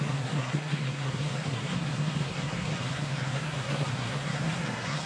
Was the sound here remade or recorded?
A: remade